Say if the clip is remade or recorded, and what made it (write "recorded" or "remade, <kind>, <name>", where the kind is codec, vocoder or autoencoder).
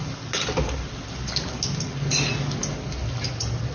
recorded